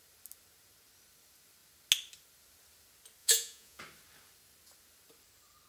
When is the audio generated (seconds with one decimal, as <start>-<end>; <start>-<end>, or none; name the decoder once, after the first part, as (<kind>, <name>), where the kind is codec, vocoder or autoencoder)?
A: 3.2-3.8 (vocoder, Vocos)